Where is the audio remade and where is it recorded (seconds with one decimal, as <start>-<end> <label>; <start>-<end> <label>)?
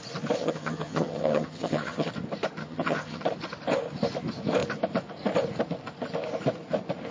0.0-0.4 recorded; 0.4-2.1 remade; 2.1-2.6 recorded; 2.6-3.2 remade; 3.2-7.1 recorded